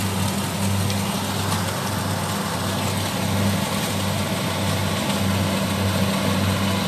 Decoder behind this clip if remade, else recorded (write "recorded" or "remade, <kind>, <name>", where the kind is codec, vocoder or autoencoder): recorded